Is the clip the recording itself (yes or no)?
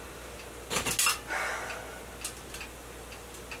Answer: yes